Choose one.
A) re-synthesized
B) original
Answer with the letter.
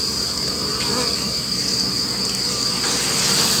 B